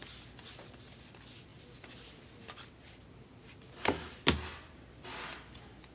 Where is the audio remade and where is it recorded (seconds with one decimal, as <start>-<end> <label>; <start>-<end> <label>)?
0.0-5.9 recorded